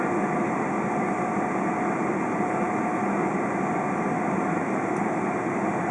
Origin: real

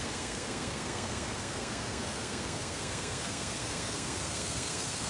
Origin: fake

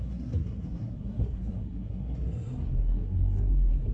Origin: fake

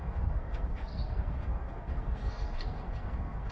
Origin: fake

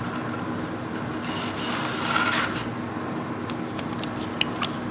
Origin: real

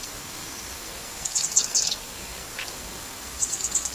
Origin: fake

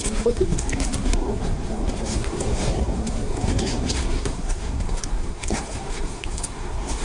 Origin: fake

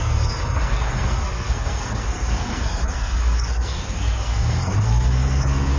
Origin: fake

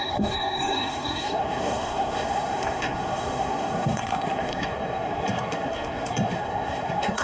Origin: fake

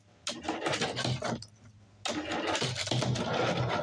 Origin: real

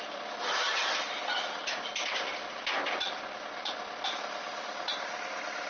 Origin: real